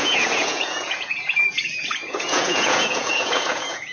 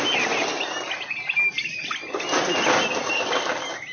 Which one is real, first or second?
second